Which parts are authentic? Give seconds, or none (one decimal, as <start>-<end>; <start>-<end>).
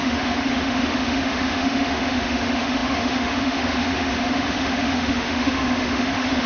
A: none